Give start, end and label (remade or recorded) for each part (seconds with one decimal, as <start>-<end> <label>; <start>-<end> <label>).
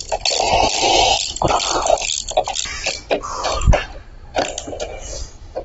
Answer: 0.0-5.6 recorded